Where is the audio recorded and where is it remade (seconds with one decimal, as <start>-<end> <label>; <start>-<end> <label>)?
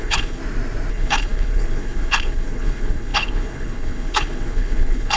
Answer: 0.0-0.4 remade; 0.4-0.9 recorded; 0.9-5.2 remade